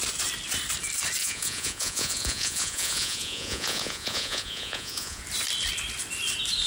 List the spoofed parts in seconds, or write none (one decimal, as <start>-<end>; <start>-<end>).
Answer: 1.2-5.2